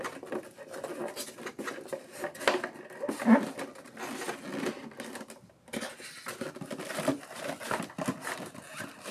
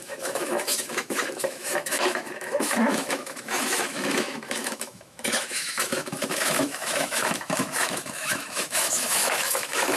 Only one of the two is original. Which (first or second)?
first